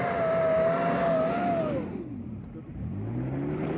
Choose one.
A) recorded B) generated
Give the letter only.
A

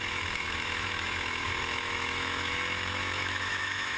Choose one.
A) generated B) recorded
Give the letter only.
A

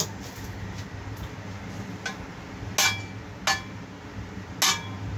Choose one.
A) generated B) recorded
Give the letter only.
B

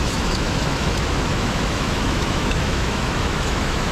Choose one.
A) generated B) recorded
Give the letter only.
A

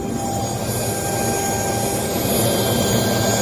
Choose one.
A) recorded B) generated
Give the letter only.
A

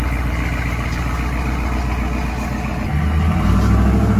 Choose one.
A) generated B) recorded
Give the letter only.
B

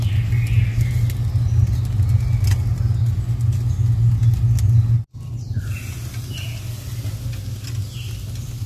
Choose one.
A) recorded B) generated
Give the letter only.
A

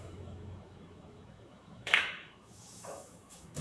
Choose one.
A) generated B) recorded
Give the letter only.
A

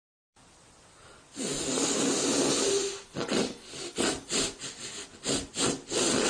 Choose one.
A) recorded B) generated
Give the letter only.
A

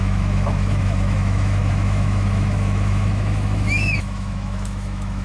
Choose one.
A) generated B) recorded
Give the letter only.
A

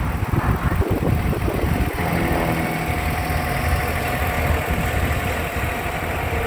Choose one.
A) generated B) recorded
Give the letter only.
B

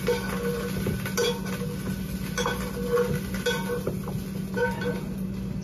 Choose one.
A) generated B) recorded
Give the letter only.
B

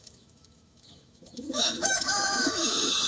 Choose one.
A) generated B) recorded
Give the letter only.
A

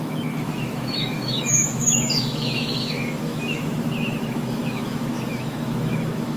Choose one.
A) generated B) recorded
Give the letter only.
A